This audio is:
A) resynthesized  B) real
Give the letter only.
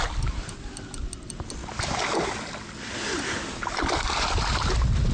B